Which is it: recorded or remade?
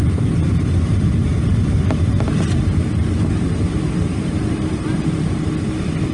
recorded